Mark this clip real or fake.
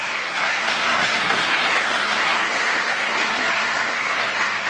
fake